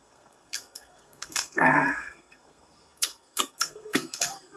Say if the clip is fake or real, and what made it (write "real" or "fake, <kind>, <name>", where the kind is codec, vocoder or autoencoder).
fake, codec, SNAC